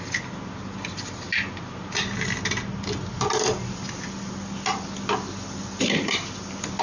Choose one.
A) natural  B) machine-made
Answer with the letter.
A